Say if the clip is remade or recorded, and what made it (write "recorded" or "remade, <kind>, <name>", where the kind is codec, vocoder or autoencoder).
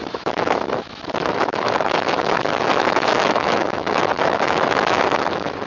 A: remade, autoencoder, DAC-VAE